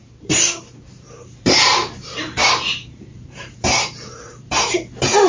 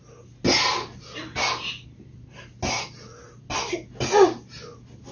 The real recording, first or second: second